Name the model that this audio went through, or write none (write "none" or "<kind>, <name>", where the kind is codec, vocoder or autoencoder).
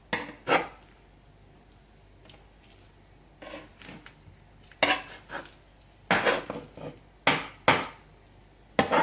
none